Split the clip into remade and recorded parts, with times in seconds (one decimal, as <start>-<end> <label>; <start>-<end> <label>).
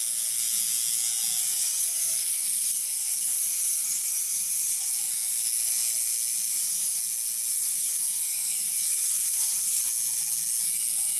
0.0-1.4 recorded; 1.4-4.9 remade; 4.9-6.5 recorded; 6.5-7.0 remade; 7.0-7.5 recorded; 7.5-9.8 remade; 9.8-11.2 recorded